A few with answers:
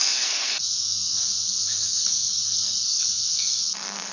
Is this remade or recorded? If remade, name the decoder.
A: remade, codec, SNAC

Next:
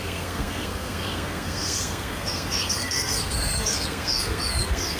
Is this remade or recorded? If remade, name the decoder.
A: remade, codec, SNAC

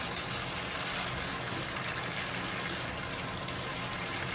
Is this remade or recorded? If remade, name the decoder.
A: recorded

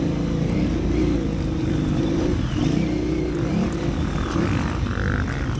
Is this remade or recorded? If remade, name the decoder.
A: recorded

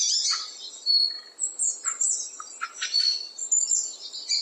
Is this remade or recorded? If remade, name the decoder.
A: recorded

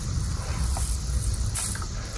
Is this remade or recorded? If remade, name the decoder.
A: recorded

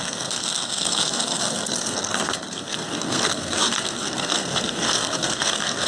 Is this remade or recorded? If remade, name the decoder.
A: remade, codec, SNAC